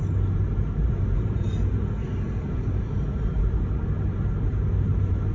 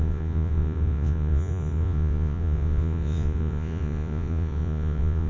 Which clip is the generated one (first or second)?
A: second